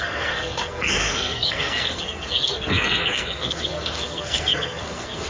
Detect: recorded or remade remade